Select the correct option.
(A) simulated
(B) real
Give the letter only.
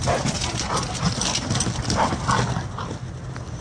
B